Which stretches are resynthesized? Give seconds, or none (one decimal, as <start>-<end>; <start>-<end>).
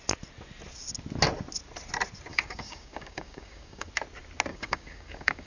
2.3-3.9; 4.5-5.5